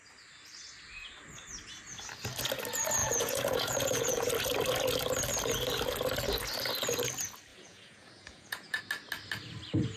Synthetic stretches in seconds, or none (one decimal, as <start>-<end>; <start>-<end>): 3.0-4.3; 7.5-8.8